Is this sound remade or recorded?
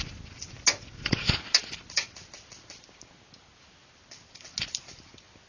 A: recorded